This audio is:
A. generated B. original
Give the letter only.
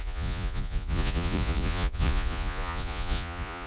A